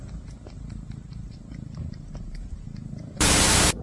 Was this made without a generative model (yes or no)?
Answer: no